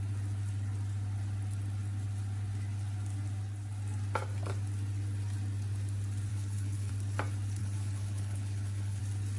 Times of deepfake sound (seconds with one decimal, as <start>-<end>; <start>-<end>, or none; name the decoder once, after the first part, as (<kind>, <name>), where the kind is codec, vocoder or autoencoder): 6.3-6.9 (codec, HILCodec); 7.6-9.0